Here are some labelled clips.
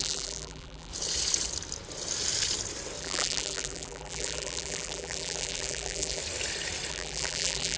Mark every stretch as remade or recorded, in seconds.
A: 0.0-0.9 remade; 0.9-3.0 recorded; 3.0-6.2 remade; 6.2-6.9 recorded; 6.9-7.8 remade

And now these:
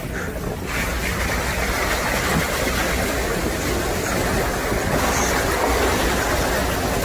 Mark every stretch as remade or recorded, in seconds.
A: 0.0-7.0 recorded

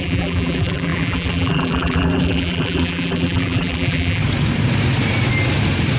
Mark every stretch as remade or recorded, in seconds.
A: 0.0-4.2 remade; 4.2-6.0 recorded

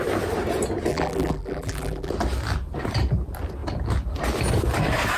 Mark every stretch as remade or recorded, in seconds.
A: 0.0-0.9 recorded; 0.9-2.1 remade; 2.1-5.2 recorded

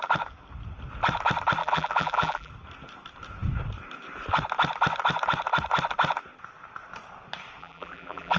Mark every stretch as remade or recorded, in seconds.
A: 0.0-1.6 recorded; 1.6-2.5 remade; 2.5-7.6 recorded; 7.6-8.4 remade

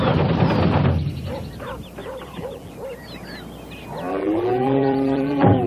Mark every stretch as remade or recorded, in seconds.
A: 0.0-2.0 recorded; 2.0-2.7 remade; 2.7-4.1 recorded; 4.1-5.7 remade

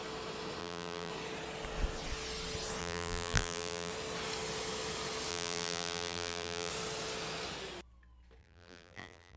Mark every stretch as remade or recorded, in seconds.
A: 0.0-0.6 recorded; 0.6-1.1 remade; 1.1-2.8 recorded; 2.8-3.9 remade; 3.9-5.3 recorded; 5.3-6.7 remade; 6.7-8.4 recorded; 8.4-9.4 remade

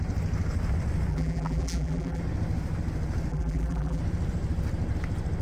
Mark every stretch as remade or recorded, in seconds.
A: 0.0-1.1 recorded; 1.1-2.2 remade; 2.2-3.3 recorded; 3.3-4.0 remade; 4.0-5.4 recorded